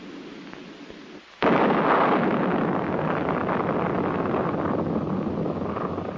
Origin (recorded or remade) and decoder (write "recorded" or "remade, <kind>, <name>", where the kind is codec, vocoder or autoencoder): recorded